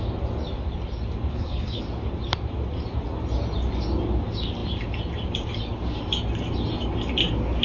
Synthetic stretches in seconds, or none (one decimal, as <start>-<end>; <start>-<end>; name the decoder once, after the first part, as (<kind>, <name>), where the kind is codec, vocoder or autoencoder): 1.3-1.8 (codec, HILCodec)